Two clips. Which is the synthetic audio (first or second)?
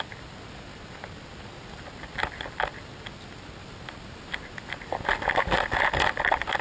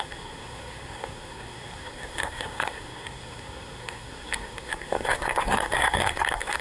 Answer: second